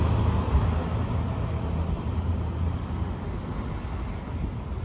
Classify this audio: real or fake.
real